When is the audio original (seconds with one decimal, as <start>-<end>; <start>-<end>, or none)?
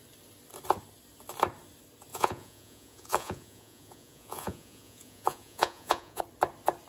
0.0-2.1; 6.2-6.9